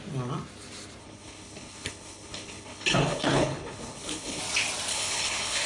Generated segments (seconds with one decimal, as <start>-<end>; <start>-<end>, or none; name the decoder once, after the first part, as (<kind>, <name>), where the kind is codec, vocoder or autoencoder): 1.0-4.4 (codec, HILCodec); 4.9-5.7